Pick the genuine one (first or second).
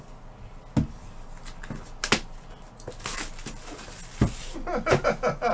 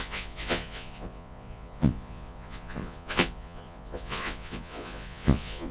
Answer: first